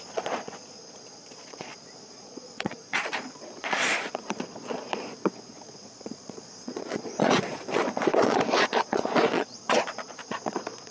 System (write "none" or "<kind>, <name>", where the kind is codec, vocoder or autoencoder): vocoder, Vocos